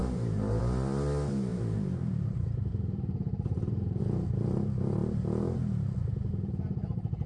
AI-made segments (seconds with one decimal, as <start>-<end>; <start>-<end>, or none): 0.0-0.6; 1.5-4.0